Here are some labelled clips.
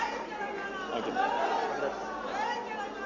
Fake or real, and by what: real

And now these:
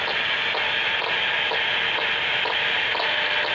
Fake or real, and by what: real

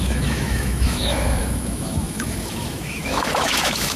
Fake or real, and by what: fake, autoencoder, DAC-VAE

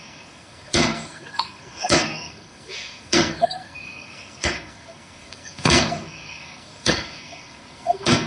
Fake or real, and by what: fake, codec, SNAC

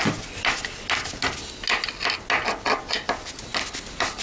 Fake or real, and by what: real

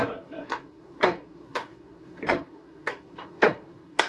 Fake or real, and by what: fake, codec, SNAC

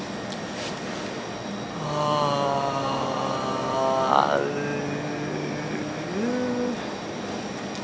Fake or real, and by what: real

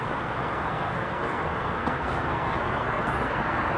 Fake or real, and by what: fake, codec, SNAC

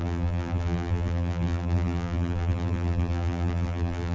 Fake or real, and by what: fake, vocoder, BigVGAN v2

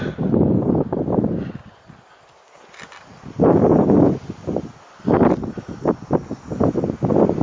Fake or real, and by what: real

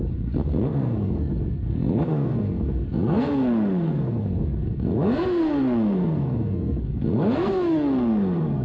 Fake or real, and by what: fake, codec, SNAC